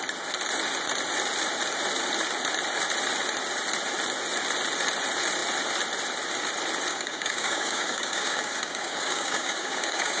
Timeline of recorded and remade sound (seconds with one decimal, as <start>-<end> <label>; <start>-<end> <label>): 0.0-6.9 recorded; 6.9-10.2 remade